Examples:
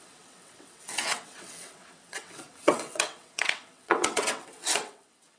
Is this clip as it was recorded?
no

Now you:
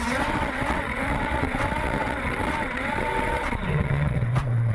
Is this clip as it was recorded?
no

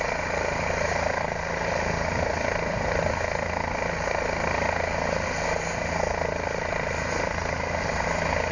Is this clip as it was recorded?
yes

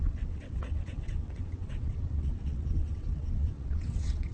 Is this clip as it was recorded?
no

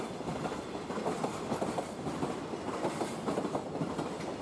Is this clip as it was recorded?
yes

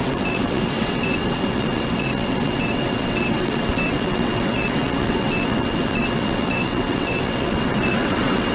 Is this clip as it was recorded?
no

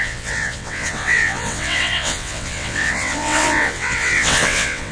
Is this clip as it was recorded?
no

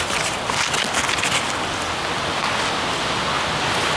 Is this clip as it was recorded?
yes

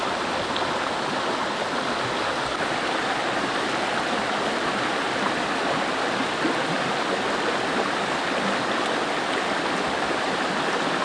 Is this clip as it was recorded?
yes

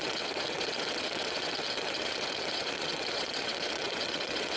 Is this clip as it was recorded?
no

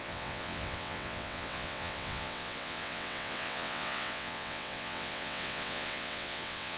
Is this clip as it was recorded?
no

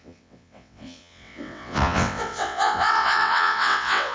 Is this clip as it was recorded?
no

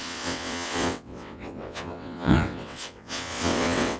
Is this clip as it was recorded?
no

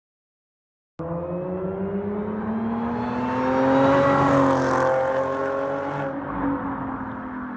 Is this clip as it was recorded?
yes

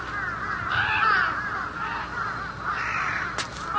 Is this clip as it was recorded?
yes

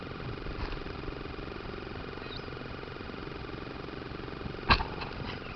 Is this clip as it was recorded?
yes